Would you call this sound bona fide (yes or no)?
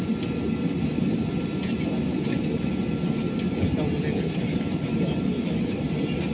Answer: yes